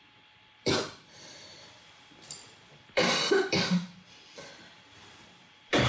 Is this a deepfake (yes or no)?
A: yes